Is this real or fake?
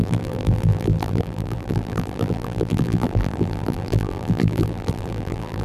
fake